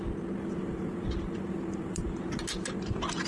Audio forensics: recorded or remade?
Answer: recorded